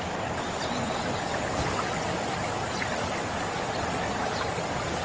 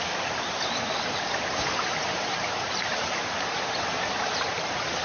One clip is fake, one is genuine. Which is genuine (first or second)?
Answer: first